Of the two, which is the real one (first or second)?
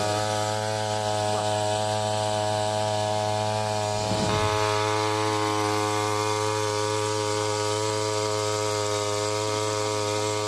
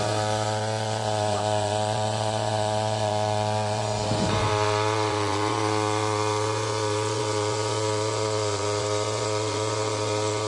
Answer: first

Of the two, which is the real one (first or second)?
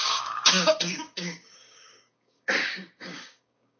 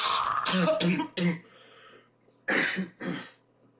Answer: second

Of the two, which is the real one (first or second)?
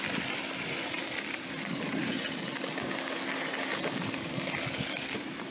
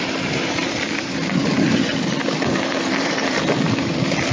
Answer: first